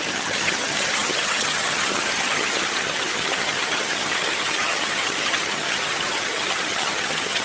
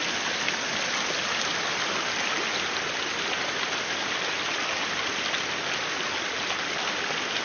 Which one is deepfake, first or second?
first